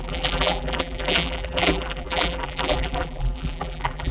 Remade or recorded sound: remade